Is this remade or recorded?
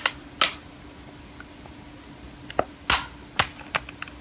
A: recorded